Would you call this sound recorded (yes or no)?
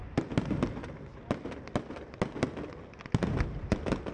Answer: yes